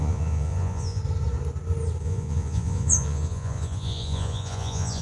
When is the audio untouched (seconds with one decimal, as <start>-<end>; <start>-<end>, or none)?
1.0-2.0